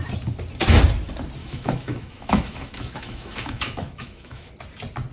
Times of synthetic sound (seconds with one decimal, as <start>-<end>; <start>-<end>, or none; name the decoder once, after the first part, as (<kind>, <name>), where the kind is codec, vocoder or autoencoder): 1.4-4.5 (autoencoder, DAC-VAE)